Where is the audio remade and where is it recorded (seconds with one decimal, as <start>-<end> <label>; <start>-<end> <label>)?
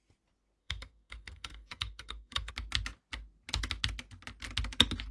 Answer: 0.0-0.6 recorded; 0.6-2.5 remade; 2.5-5.1 recorded